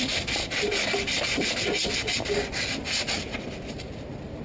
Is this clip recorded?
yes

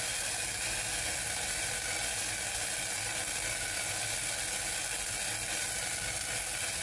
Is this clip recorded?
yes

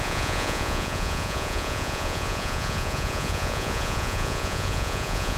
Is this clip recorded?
no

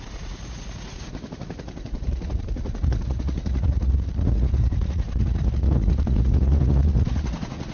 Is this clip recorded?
no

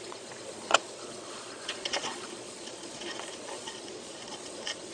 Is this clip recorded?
no